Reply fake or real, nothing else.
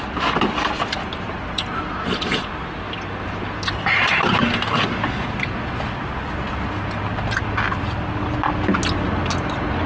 real